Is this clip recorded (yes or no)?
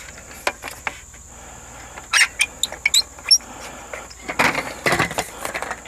yes